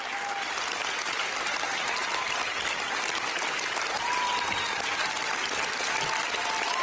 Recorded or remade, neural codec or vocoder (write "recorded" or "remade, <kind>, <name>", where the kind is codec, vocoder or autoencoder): recorded